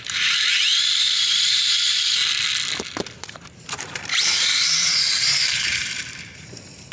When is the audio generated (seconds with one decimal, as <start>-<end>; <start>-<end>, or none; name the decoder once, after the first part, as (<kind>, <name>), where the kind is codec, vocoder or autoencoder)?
0.0-2.2 (vocoder, BigVGAN v2); 3.3-6.9